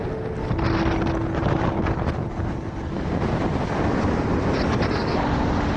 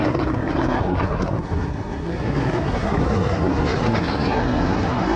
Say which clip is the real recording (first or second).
first